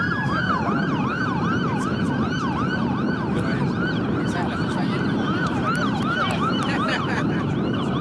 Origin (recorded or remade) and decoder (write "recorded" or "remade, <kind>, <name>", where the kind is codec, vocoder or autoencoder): remade, vocoder, BigVGAN v2